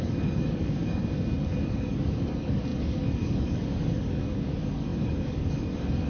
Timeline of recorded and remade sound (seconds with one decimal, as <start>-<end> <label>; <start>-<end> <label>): 0.0-1.0 remade; 1.0-1.5 recorded; 1.5-6.1 remade